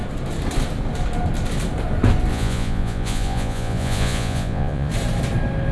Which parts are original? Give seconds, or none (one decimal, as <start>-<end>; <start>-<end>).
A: 0.0-2.3; 4.9-5.7